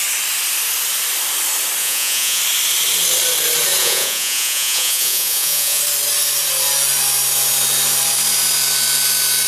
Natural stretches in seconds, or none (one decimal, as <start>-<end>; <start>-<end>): 0.0-1.8; 2.4-3.8; 5.8-9.5